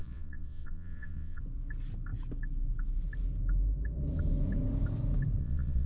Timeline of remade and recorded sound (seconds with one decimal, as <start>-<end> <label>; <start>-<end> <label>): 0.0-1.4 remade; 1.4-5.4 recorded; 5.4-5.9 remade

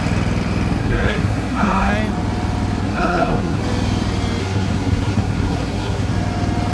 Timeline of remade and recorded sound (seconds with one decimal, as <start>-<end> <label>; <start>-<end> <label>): 0.0-0.8 recorded; 0.8-1.9 remade; 1.9-2.8 recorded; 2.8-3.6 remade; 3.6-4.4 recorded; 4.4-6.1 remade; 6.1-6.7 recorded

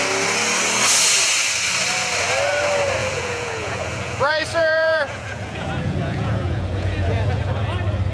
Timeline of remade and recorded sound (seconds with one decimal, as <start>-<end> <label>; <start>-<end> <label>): 0.0-3.0 recorded; 3.0-7.5 remade; 7.5-8.1 recorded

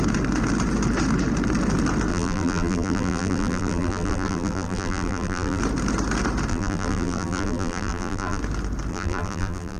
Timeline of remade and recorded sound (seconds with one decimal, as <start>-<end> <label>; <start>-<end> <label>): 0.0-2.1 recorded; 2.1-5.6 remade; 5.6-6.5 recorded; 6.5-8.4 remade; 8.4-8.9 recorded; 8.9-9.8 remade

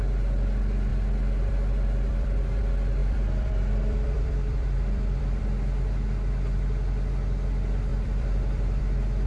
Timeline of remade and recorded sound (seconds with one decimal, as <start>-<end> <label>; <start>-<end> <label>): 0.0-2.1 recorded; 2.1-2.6 remade; 2.6-3.0 recorded; 3.0-5.4 remade; 5.4-7.9 recorded; 7.9-8.8 remade; 8.8-9.3 recorded

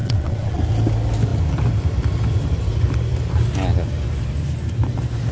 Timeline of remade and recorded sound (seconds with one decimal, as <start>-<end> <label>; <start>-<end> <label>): 0.0-0.6 remade; 0.6-5.3 recorded

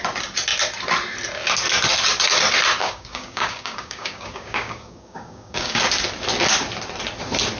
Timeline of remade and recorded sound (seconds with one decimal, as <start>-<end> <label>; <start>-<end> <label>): 0.0-2.8 recorded; 2.8-5.8 remade; 5.8-7.6 recorded